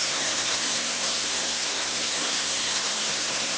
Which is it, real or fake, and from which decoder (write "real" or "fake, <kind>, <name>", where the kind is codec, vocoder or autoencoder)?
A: fake, codec, SNAC